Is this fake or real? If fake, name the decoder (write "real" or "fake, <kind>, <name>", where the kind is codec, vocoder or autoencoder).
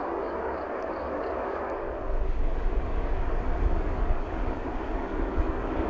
fake, codec, DAC